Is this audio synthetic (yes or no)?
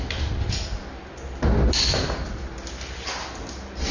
no